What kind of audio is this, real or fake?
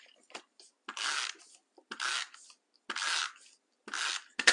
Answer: real